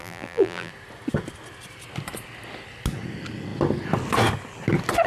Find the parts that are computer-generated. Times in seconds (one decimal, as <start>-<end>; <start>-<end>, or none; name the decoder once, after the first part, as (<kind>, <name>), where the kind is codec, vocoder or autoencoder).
0.0-0.7 (vocoder, BigVGAN v2)